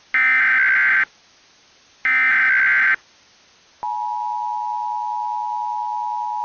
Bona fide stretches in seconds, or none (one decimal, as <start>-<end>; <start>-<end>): 0.0-6.4